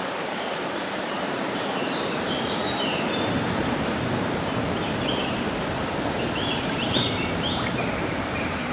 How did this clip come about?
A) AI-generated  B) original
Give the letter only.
A